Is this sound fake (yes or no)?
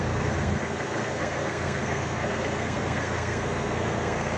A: yes